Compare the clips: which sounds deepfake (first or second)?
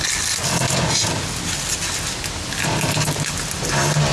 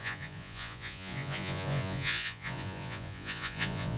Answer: second